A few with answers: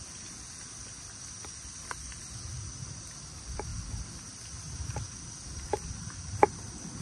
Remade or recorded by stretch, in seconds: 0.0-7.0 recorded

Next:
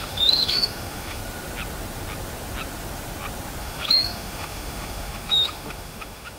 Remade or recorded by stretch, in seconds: 0.0-1.2 remade; 1.2-3.6 recorded; 3.6-6.4 remade

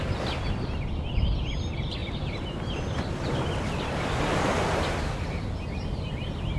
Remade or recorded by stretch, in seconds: 0.0-6.6 recorded

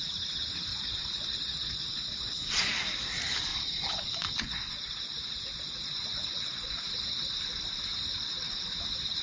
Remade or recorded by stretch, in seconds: 0.0-0.7 recorded; 0.7-2.7 remade; 2.7-3.5 recorded; 3.5-7.3 remade; 7.3-9.2 recorded

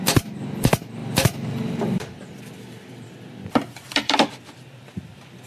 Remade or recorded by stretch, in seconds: 0.0-1.0 recorded; 1.0-4.3 remade; 4.3-5.5 recorded